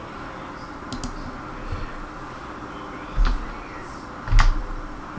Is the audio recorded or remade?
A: recorded